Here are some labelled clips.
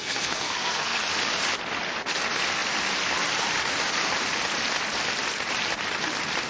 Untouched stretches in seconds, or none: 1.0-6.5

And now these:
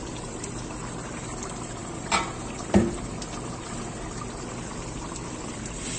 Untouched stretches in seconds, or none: 0.0-6.0

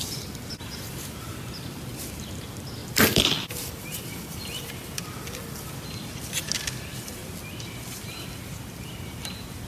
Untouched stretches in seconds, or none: 0.0-2.8; 5.7-9.7

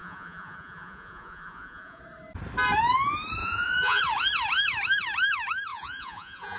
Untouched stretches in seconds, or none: 2.0-3.4; 4.0-5.7

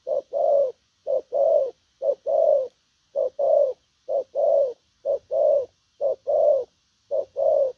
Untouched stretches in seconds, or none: 3.8-7.2

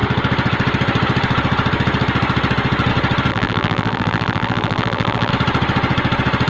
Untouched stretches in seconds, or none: 0.0-3.3; 5.3-6.5

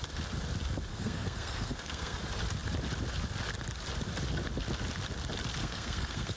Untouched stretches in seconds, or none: 0.0-0.9; 2.2-5.6

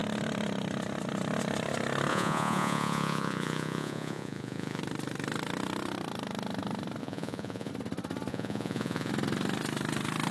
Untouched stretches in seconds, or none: 0.0-2.1; 4.8-7.0; 7.7-8.3; 9.1-10.3